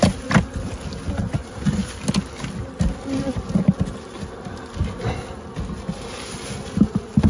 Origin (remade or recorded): recorded